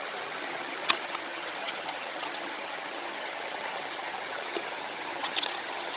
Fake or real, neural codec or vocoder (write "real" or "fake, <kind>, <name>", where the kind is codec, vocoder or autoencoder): fake, vocoder, HiFi-GAN